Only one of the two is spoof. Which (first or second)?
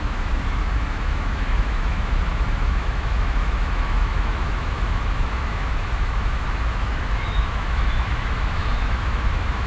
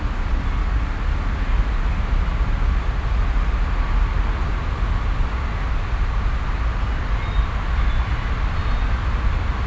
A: first